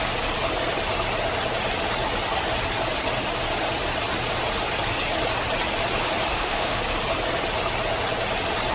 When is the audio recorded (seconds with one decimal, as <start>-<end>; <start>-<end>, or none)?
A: 0.0-6.3; 6.8-8.7